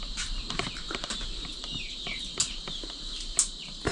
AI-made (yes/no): no